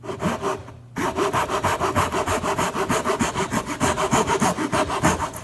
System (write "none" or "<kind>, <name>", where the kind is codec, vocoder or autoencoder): none